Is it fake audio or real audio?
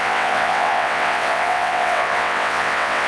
fake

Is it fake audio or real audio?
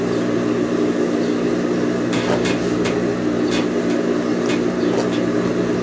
real